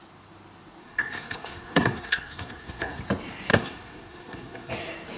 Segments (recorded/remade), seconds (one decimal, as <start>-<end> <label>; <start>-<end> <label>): 0.0-0.8 recorded; 0.8-3.0 remade; 3.0-3.5 recorded; 3.5-4.7 remade; 4.7-5.2 recorded